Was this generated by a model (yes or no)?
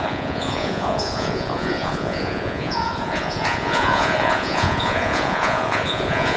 yes